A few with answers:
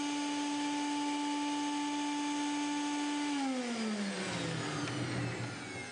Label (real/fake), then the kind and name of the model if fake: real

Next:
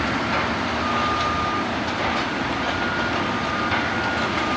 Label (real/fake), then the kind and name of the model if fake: real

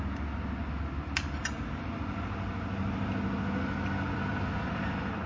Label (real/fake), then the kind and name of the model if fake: real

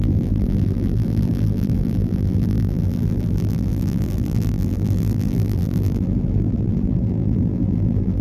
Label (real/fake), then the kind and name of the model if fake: fake, vocoder, BigVGAN v2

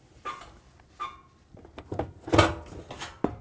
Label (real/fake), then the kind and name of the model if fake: real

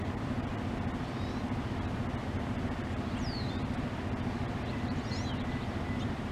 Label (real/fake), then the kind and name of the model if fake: fake, vocoder, BigVGAN v2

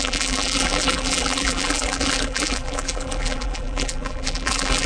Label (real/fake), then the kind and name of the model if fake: fake, vocoder, BigVGAN v2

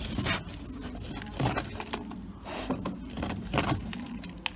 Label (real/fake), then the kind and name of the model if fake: real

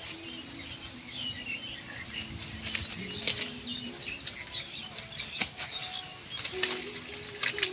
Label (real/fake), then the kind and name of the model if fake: real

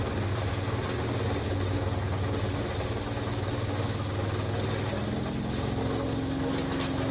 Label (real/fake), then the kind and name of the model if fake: real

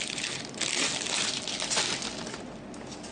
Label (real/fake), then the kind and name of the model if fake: real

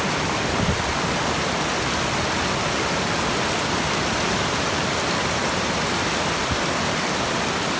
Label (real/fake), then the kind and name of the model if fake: real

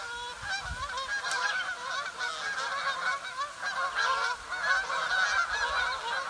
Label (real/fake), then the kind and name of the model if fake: real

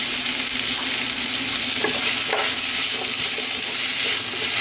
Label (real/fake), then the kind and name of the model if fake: real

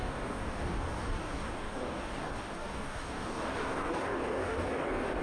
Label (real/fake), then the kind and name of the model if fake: fake, codec, DAC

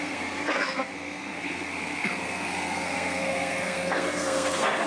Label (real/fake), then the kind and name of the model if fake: fake, codec, SNAC